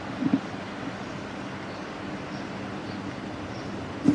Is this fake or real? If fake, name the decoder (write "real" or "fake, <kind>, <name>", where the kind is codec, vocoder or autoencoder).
real